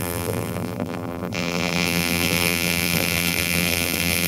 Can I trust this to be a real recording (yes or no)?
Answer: no